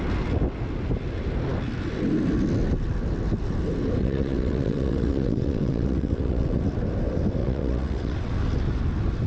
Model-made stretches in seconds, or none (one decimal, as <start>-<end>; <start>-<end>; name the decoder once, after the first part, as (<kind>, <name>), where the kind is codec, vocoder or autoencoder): 4.0-6.6 (vocoder, WaveNeXt); 7.4-8.3